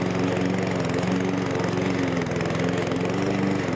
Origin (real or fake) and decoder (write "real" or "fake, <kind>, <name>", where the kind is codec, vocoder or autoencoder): real